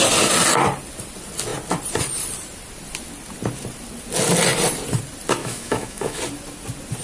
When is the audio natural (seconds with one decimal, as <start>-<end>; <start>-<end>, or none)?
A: 0.0-5.4; 6.2-7.0